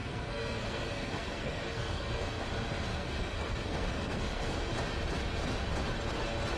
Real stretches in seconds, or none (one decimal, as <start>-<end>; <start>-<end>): 2.4-2.9; 4.7-6.6